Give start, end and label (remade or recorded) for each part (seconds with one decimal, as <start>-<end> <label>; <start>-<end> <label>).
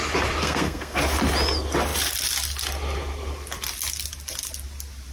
0.0-0.4 recorded; 0.4-1.0 remade; 1.0-5.1 recorded